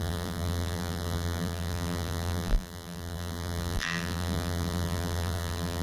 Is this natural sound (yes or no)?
no